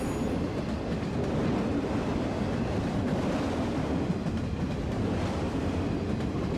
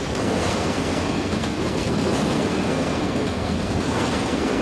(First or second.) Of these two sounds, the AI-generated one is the second